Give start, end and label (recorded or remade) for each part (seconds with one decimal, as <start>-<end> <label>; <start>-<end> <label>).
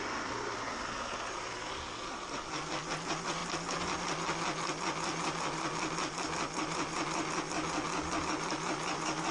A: 0.0-9.3 recorded